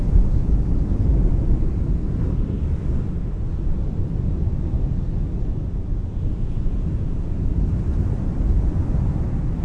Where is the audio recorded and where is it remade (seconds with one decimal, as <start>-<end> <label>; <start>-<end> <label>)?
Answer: 0.0-0.4 recorded; 0.4-1.3 remade; 1.3-5.9 recorded; 5.9-7.3 remade; 7.3-9.6 recorded